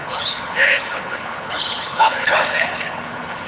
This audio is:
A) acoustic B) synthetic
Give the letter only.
B